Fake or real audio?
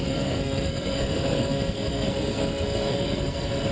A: fake